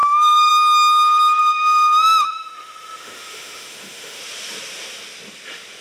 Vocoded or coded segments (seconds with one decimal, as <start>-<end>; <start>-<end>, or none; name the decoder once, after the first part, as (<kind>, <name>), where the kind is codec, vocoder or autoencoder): 0.0-0.5 (autoencoder, DAC-VAE); 1.4-4.2